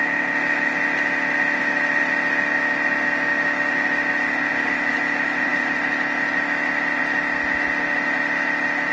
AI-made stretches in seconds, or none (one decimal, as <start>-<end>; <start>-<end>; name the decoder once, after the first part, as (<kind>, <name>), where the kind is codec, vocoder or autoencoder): none